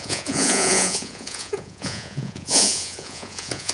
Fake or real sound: fake